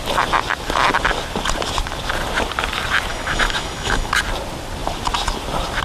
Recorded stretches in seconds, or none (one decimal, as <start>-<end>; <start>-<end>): 0.0-3.1; 4.1-5.8